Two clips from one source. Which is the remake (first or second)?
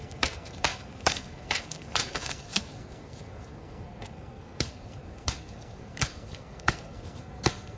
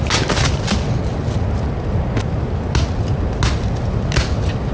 first